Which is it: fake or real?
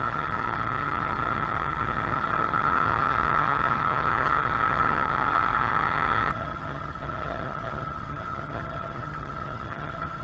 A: fake